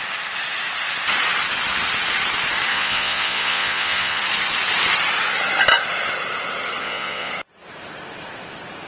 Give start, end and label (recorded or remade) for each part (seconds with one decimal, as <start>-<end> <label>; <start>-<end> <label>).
0.0-2.7 recorded; 2.7-4.2 remade; 4.2-6.8 recorded; 6.8-7.3 remade; 7.3-8.9 recorded